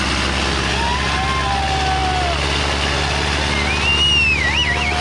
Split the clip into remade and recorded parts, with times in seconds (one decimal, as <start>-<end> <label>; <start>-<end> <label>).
0.0-5.0 recorded